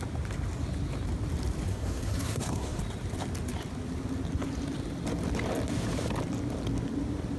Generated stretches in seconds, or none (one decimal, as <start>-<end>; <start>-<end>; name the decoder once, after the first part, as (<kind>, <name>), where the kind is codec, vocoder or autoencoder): 1.7-2.8 (codec, SNAC)